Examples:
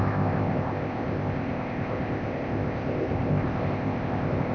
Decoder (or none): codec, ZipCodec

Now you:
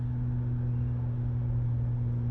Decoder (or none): none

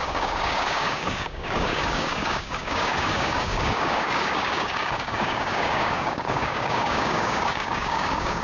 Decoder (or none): codec, DAC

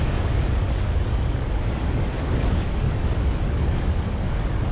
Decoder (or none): codec, DAC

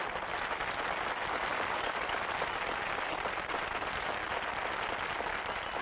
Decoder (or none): none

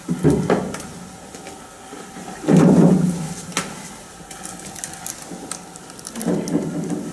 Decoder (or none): none